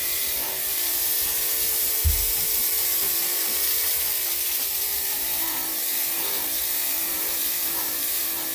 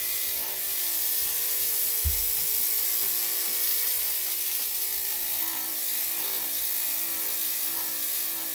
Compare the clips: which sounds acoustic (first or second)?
second